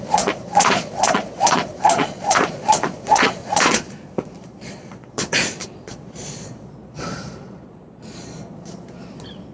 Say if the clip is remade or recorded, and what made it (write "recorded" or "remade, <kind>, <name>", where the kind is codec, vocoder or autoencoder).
remade, vocoder, Vocos